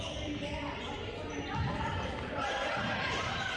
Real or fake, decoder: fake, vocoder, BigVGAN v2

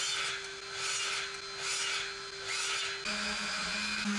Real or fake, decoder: real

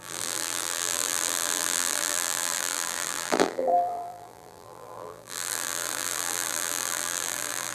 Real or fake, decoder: fake, vocoder, BigVGAN v2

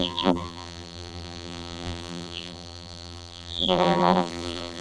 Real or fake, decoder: fake, vocoder, BigVGAN v2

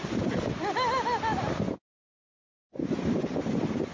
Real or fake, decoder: real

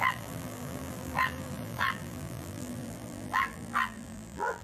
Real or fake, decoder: fake, vocoder, BigVGAN v2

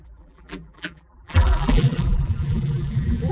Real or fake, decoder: fake, vocoder, BigVGAN v2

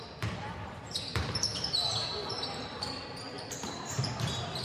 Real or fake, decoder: fake, vocoder, BigVGAN v2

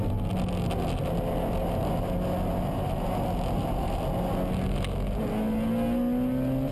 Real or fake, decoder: real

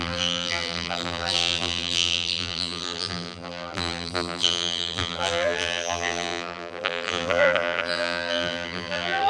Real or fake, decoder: fake, vocoder, BigVGAN v2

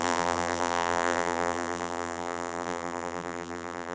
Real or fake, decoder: fake, vocoder, BigVGAN v2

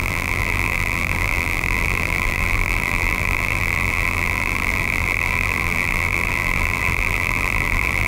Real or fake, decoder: fake, vocoder, BigVGAN v2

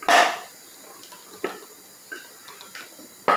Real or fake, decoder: real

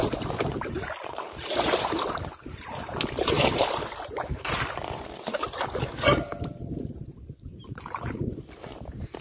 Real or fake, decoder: fake, vocoder, BigVGAN v2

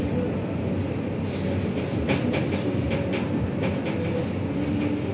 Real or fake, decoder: real